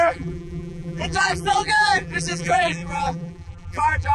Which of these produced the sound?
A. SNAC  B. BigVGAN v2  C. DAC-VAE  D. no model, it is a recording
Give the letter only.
B